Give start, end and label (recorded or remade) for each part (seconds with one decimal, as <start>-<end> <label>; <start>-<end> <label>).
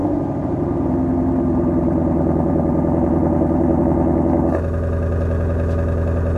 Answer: 0.0-3.8 remade; 3.8-6.4 recorded